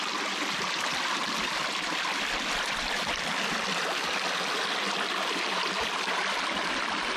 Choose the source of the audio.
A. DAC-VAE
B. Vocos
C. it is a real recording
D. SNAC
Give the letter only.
C